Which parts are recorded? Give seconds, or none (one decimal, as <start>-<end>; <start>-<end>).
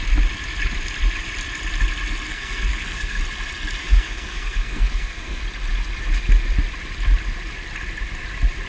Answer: 0.0-2.3; 3.2-3.8; 5.4-8.7